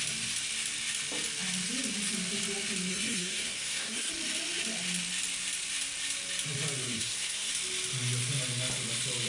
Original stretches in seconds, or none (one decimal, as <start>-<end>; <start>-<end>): 0.0-2.9; 4.1-6.8; 7.5-9.3